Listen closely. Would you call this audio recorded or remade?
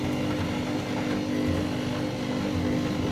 recorded